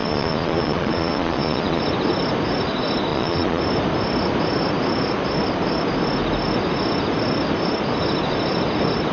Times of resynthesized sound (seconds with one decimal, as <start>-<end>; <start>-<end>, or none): 0.0-1.8; 3.1-3.6